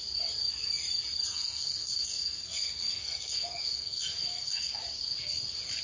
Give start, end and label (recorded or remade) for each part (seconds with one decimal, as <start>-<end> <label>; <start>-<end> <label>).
0.0-1.3 recorded; 1.3-4.8 remade; 4.8-5.8 recorded